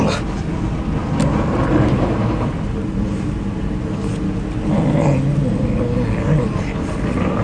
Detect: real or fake real